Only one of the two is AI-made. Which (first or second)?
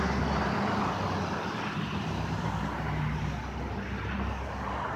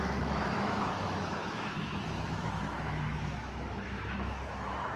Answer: second